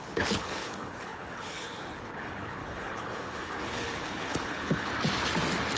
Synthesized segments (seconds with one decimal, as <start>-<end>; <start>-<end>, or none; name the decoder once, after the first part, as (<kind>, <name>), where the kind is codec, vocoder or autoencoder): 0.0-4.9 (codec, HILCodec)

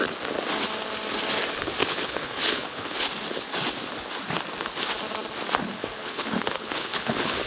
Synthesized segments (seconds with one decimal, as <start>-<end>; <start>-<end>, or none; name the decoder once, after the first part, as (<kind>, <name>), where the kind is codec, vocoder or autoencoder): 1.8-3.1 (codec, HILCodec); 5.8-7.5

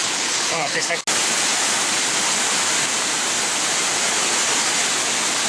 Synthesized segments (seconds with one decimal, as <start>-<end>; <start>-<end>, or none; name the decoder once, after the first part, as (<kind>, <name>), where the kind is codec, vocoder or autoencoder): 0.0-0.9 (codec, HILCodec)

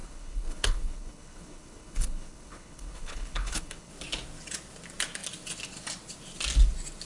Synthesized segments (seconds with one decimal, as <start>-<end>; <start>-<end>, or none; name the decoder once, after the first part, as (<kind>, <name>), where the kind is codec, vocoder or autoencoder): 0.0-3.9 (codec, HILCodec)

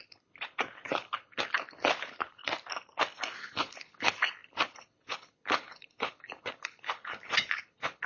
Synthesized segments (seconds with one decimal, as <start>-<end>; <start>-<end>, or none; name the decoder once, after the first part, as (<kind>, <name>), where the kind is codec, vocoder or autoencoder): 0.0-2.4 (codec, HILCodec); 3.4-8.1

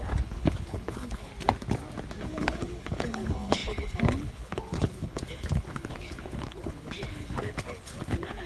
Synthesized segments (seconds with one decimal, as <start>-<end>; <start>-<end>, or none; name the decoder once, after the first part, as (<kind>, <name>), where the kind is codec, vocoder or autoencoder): 0.0-1.3 (codec, HILCodec); 2.2-8.5

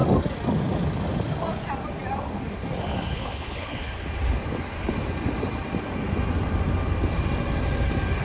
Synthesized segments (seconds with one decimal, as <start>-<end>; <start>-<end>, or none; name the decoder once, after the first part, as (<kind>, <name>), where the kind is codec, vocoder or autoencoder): 3.1-3.9 (codec, HILCodec)